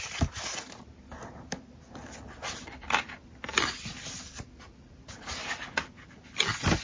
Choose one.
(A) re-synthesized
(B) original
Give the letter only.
B